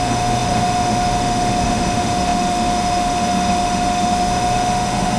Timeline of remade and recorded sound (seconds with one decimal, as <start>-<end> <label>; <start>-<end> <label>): 0.0-5.2 remade